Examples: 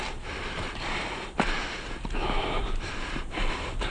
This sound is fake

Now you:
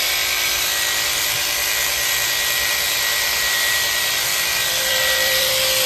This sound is fake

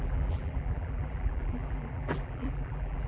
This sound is fake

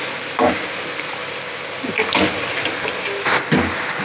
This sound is real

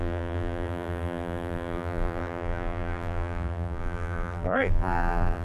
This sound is fake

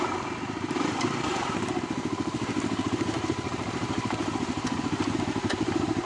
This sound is fake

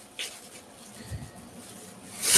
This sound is real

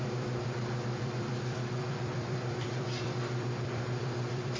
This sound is fake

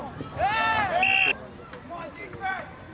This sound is real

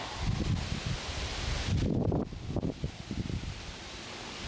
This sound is fake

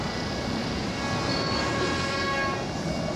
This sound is real